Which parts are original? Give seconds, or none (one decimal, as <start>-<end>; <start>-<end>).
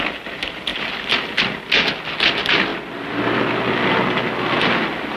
0.0-5.2